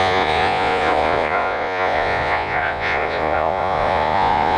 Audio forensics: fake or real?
fake